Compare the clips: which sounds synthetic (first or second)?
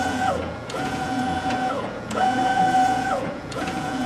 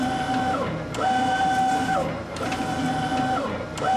first